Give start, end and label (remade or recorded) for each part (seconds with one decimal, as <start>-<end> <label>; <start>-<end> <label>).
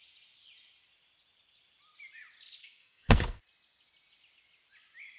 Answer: 0.0-2.6 recorded; 2.6-3.4 remade; 3.4-5.2 recorded